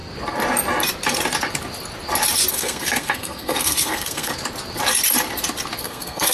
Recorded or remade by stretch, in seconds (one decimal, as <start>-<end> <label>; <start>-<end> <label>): 0.0-2.5 recorded; 2.5-4.3 remade; 4.3-5.8 recorded; 5.8-6.3 remade